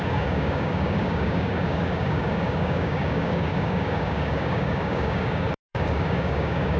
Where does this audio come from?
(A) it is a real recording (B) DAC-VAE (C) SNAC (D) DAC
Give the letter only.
D